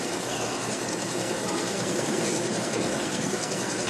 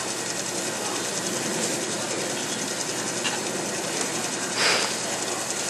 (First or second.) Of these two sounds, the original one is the second